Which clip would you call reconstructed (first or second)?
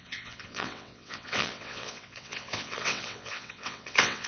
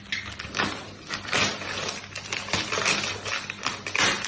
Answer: first